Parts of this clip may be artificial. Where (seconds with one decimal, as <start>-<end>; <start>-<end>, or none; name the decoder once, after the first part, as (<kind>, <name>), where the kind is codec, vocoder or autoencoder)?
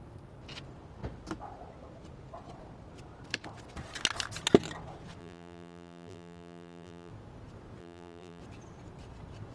5.2-7.1 (vocoder, BigVGAN v2); 7.8-8.4